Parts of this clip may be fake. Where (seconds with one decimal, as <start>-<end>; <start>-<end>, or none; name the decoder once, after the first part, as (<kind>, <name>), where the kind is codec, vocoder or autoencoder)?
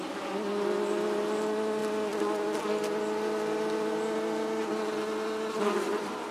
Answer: 0.0-1.8 (vocoder, BigVGAN v2); 5.6-6.3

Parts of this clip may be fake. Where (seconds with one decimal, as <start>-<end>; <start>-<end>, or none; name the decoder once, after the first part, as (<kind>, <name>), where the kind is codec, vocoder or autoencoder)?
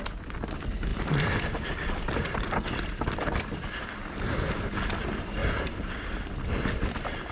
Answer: 0.9-3.9 (vocoder, BigVGAN v2); 5.4-6.1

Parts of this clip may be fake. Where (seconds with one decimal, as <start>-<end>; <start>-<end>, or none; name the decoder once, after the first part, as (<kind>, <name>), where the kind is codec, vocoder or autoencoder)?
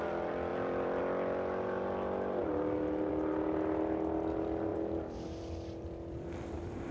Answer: 0.5-1.0 (vocoder, BigVGAN v2); 4.7-6.9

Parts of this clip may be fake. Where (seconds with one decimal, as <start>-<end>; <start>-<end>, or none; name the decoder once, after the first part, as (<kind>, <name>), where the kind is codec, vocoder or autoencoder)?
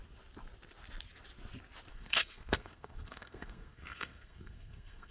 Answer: 1.9-5.1 (codec, SNAC)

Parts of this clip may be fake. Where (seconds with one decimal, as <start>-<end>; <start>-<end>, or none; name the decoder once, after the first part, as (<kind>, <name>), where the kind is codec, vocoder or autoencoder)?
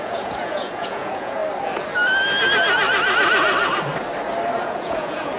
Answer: 0.0-1.4 (vocoder, Vocos); 4.6-5.4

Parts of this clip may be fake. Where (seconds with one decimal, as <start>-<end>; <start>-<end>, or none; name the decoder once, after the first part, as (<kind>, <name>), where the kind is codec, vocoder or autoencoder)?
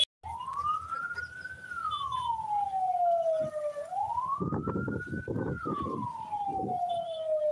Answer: none